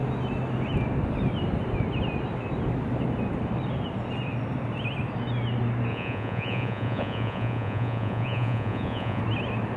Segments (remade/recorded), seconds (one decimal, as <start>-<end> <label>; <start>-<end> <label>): 0.0-5.9 recorded; 5.9-9.2 remade; 9.2-9.8 recorded